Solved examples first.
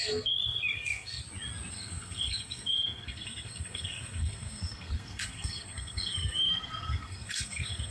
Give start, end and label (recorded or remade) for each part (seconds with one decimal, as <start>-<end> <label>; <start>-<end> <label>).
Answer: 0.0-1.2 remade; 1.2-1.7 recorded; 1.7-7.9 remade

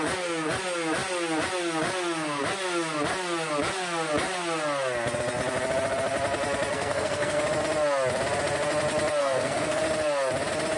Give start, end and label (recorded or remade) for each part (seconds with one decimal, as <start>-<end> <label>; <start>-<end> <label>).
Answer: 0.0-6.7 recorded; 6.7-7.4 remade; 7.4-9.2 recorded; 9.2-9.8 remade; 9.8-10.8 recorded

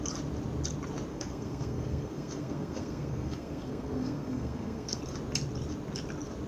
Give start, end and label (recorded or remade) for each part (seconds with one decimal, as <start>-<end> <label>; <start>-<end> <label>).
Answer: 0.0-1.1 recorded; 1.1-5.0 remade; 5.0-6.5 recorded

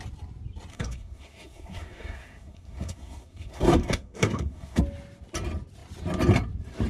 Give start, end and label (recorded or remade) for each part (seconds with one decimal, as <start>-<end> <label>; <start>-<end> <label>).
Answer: 0.0-0.7 recorded; 0.7-4.8 remade; 4.8-6.9 recorded

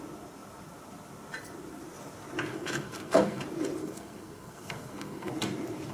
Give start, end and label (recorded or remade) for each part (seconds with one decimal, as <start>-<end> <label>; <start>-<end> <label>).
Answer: 0.0-2.5 recorded; 2.5-3.4 remade; 3.4-3.8 recorded; 3.8-5.3 remade; 5.3-5.9 recorded

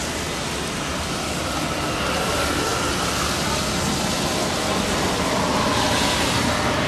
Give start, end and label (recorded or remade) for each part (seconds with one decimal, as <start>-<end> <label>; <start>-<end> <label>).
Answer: 0.0-6.9 recorded